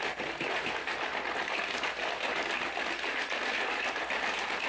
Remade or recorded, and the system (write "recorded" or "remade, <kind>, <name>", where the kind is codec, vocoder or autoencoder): recorded